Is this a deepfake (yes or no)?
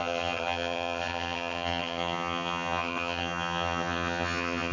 yes